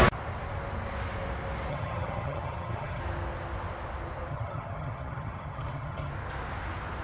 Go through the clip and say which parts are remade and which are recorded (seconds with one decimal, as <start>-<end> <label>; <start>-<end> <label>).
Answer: 0.0-1.7 recorded; 1.7-3.0 remade; 3.0-4.3 recorded; 4.3-6.1 remade; 6.1-7.0 recorded